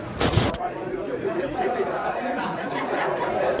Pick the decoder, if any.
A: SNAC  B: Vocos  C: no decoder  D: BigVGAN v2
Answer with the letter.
B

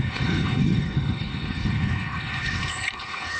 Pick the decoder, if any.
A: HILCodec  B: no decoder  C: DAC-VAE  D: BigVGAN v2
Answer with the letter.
A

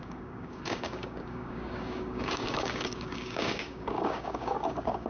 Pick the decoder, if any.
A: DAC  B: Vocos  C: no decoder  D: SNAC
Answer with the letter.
A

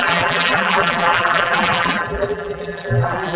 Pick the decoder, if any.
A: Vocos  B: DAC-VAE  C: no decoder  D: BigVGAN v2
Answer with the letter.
D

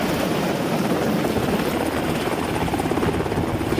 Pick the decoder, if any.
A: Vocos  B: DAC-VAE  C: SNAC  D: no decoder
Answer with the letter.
D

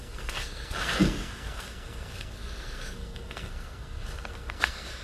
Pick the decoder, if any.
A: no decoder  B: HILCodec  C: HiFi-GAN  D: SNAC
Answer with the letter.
D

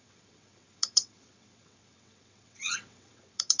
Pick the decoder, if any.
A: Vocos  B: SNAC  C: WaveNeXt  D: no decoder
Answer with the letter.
C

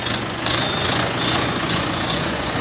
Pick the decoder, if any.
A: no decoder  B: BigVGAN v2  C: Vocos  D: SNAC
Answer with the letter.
C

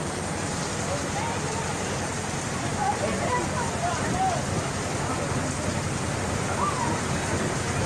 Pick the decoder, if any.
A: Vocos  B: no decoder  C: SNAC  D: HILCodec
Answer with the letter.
B